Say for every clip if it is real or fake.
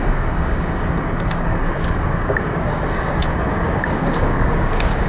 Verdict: fake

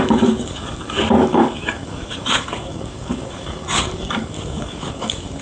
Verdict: fake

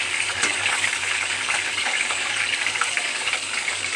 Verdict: fake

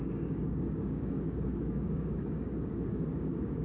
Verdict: fake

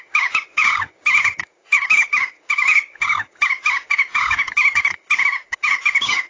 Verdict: fake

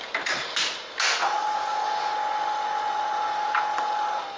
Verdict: real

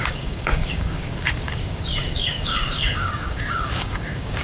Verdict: fake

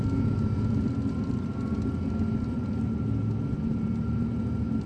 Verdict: real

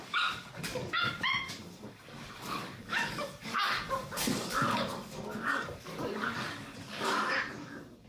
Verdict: fake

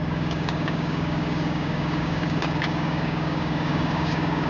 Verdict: fake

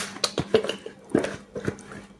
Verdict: real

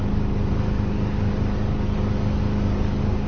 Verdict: fake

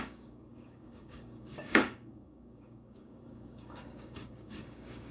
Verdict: fake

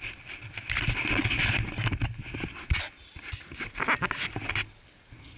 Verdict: real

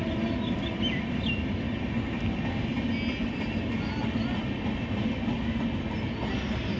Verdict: real